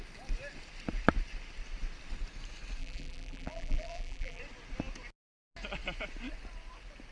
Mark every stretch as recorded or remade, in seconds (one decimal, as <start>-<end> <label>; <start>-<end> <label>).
0.0-2.8 recorded; 2.8-4.4 remade; 4.4-7.1 recorded